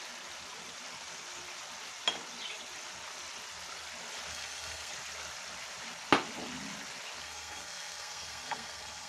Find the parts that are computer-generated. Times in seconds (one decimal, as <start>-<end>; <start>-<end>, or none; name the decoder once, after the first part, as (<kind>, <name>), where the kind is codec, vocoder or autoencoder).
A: 4.3-4.9 (codec, SNAC); 7.2-9.1